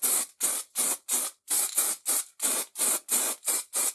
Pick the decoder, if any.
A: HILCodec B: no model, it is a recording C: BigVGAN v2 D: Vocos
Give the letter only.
B